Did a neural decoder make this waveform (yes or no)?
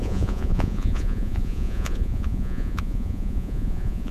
yes